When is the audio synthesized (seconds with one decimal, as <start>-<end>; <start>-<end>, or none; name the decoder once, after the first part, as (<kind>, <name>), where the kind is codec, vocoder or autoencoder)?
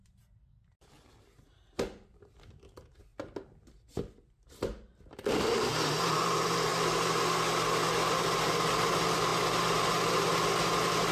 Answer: none